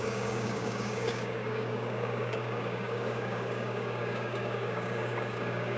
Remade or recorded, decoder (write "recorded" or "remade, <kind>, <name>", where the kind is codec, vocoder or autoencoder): remade, codec, DAC